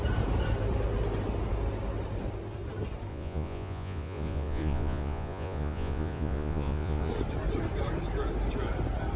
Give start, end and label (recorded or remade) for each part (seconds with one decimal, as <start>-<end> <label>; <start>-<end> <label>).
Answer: 0.0-3.1 recorded; 3.1-7.1 remade; 7.1-9.2 recorded